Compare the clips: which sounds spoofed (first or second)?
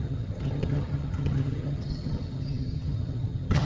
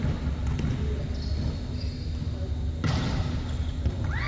first